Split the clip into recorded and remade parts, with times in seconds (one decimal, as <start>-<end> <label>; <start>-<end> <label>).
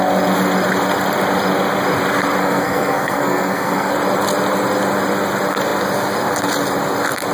0.0-2.4 recorded; 2.4-3.9 remade; 3.9-7.3 recorded